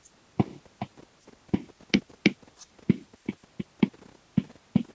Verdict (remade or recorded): recorded